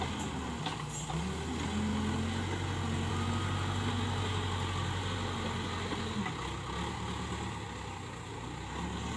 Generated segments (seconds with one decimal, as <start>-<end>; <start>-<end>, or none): none